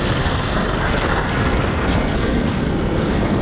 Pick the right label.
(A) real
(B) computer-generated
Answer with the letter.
B